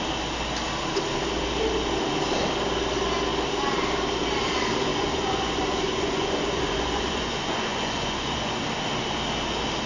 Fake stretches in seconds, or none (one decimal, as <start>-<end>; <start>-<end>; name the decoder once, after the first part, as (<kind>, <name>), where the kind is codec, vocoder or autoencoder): 4.9-8.5 (vocoder, Vocos)